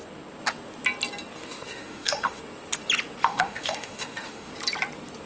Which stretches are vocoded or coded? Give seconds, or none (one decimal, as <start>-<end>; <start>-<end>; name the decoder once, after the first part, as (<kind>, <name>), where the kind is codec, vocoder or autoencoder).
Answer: 1.4-2.4 (autoencoder, DAC-VAE); 3.2-4.5